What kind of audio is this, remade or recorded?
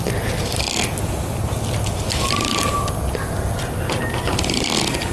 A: recorded